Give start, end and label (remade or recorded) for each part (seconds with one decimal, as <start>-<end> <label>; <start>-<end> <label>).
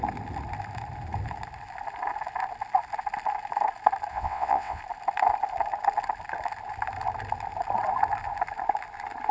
0.0-4.1 recorded; 4.1-4.8 remade; 4.8-9.3 recorded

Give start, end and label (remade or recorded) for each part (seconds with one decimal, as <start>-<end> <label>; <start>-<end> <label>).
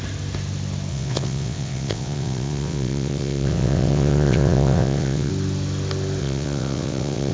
0.0-0.9 recorded; 0.9-5.3 remade; 5.3-6.2 recorded; 6.2-7.3 remade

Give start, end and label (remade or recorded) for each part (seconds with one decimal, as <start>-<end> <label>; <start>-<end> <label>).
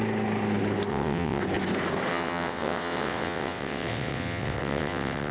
0.0-0.9 recorded; 0.9-1.4 remade; 1.4-2.1 recorded; 2.1-5.3 remade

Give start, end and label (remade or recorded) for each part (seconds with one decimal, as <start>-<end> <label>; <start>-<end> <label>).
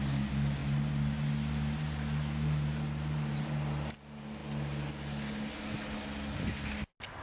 0.0-7.2 recorded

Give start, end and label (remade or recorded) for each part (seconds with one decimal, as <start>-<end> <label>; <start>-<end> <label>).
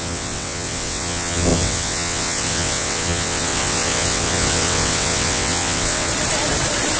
0.0-6.1 remade; 6.1-7.0 recorded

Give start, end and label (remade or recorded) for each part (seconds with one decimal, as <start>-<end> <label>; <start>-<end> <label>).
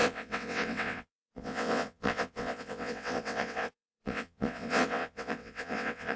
0.0-6.2 remade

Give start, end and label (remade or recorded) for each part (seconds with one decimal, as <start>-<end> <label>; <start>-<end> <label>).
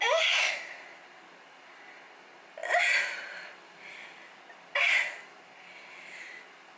0.0-6.8 recorded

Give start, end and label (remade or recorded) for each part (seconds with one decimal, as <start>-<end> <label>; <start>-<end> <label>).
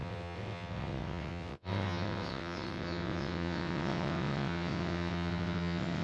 0.0-6.0 remade